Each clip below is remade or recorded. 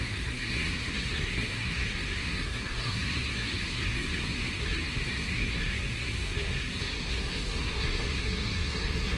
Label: remade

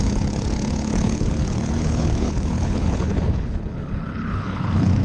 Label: remade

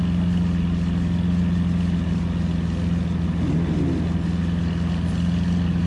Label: recorded